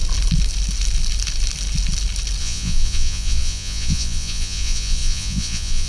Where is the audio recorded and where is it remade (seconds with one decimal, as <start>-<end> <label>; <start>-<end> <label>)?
0.0-2.4 recorded; 2.4-5.9 remade